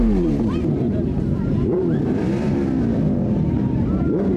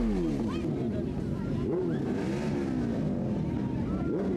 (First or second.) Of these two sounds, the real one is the second